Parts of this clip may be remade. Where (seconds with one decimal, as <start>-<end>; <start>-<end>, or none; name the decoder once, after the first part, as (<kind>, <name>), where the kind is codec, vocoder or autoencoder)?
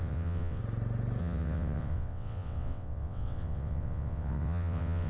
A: 0.0-0.6 (vocoder, WaveNeXt); 1.2-5.1